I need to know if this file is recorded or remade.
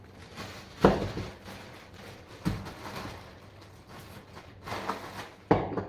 recorded